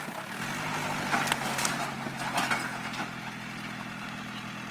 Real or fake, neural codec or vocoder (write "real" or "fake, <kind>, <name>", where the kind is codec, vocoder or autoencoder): real